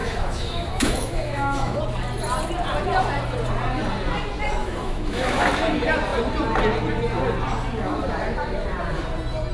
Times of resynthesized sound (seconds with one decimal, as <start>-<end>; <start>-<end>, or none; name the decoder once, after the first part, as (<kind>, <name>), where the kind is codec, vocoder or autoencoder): 0.0-1.8 (autoencoder, DAC-VAE); 4.6-5.5